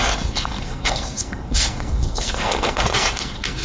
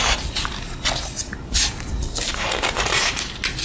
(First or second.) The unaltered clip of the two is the second